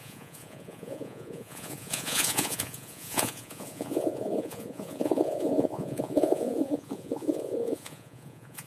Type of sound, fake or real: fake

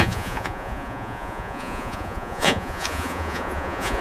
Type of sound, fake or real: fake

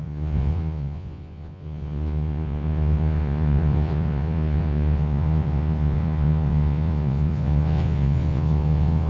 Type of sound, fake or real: fake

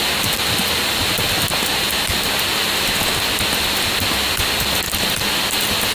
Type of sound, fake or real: real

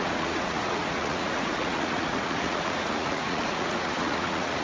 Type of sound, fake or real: fake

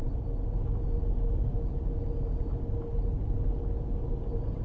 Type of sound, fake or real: real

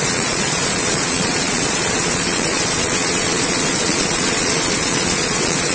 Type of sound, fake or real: fake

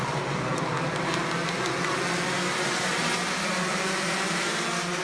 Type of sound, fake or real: real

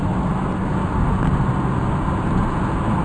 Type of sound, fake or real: real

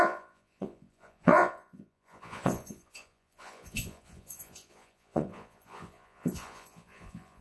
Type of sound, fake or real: fake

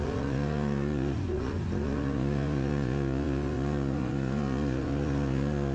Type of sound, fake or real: fake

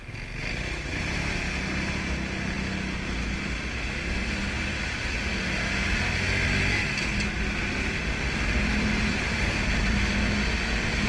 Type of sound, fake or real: real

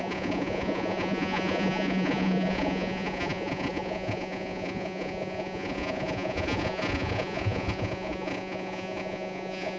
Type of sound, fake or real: fake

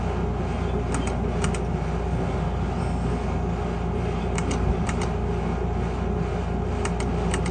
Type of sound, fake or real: real